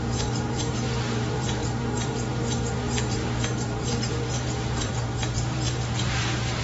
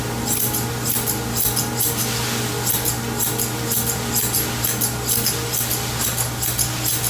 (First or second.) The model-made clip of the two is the first